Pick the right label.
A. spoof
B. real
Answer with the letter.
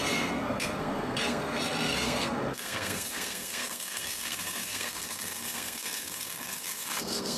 A